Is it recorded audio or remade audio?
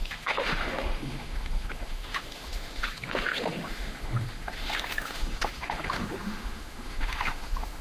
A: remade